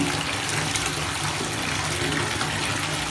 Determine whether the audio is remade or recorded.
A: recorded